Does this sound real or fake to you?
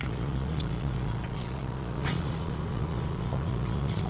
fake